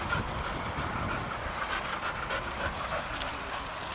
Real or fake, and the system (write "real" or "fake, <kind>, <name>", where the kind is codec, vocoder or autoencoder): fake, vocoder, BigVGAN v2